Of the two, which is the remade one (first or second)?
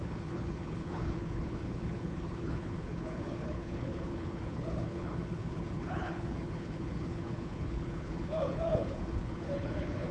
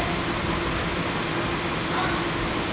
first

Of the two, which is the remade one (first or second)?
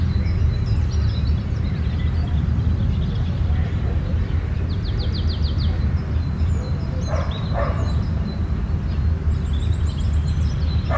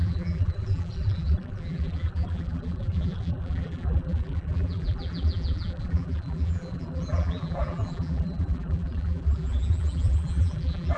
second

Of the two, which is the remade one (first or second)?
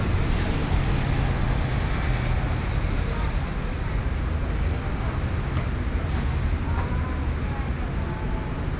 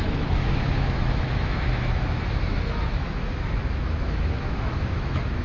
second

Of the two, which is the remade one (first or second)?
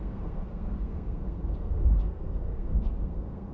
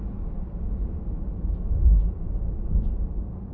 first